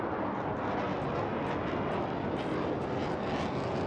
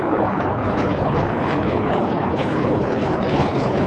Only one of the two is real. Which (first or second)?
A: first